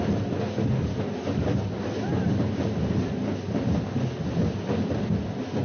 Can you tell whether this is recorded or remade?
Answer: recorded